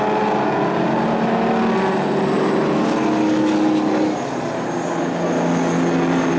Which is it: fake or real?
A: real